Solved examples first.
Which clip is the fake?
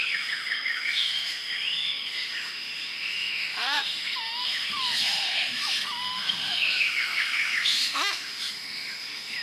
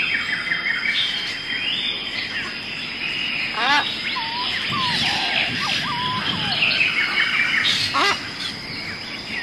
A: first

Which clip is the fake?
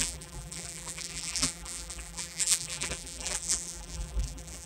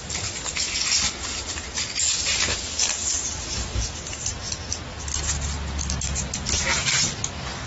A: first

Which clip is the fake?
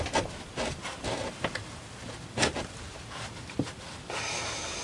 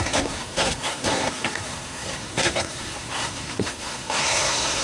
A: second